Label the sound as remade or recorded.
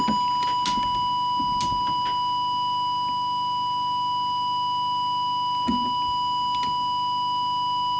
recorded